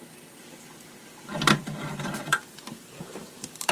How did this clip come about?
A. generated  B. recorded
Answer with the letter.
A